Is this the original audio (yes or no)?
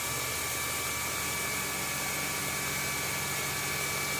yes